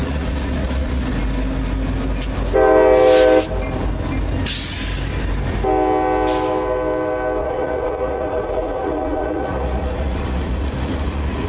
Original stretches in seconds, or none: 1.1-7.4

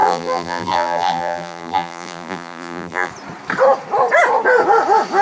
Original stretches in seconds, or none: 3.1-5.2

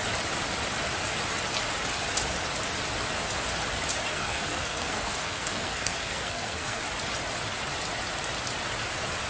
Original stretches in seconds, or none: 0.0-4.1; 6.8-9.3